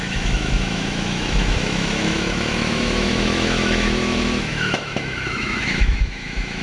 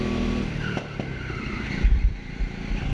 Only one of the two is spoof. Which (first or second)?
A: first